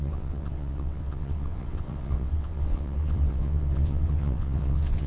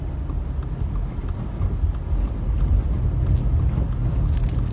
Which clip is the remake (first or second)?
first